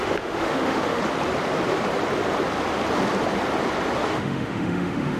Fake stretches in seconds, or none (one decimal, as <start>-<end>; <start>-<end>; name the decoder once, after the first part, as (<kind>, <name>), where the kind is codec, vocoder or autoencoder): 0.0-1.0 (autoencoder, DAC-VAE); 4.1-5.2